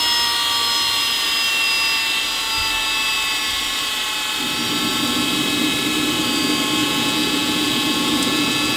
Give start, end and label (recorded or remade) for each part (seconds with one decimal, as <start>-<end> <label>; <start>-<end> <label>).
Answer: 0.0-6.8 recorded; 6.8-8.8 remade